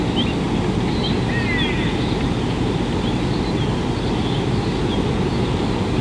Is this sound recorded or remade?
recorded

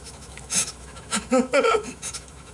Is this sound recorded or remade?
remade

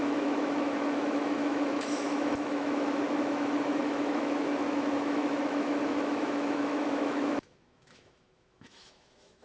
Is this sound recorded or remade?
remade